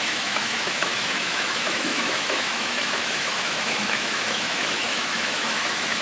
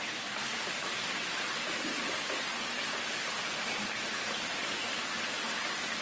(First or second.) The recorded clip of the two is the second